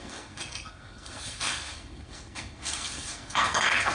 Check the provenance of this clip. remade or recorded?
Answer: remade